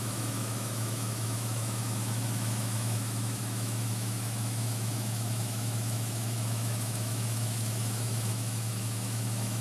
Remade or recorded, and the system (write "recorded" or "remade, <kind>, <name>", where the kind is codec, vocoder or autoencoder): remade, autoencoder, DAC-VAE